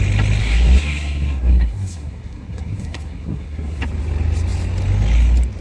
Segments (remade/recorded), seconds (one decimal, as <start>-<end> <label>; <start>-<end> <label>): 0.0-0.4 recorded; 0.4-3.8 remade; 3.8-5.6 recorded